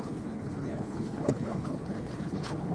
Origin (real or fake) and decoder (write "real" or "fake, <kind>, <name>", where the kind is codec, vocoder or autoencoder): fake, codec, HILCodec